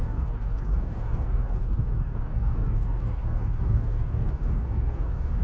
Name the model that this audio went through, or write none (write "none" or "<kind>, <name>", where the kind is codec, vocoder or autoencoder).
codec, DAC